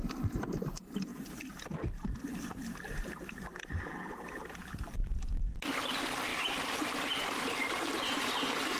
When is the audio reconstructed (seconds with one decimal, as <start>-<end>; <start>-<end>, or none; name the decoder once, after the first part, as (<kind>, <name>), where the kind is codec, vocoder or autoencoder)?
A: 0.0-8.8 (vocoder, BigVGAN v2)